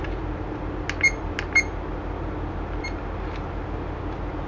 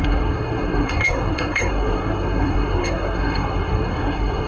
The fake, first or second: second